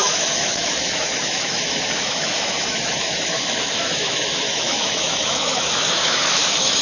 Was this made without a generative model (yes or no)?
no